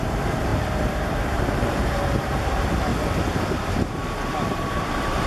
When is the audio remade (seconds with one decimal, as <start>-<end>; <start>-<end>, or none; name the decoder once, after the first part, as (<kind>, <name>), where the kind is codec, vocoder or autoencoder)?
0.0-2.9 (vocoder, BigVGAN v2); 3.5-4.0; 4.5-5.3